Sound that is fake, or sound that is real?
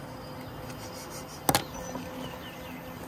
real